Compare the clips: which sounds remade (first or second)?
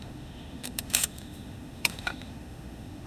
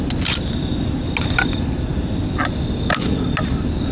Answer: first